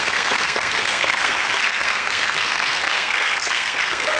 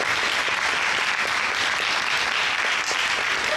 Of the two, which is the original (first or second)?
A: second